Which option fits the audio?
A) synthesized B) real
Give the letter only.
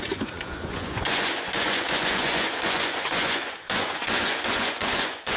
A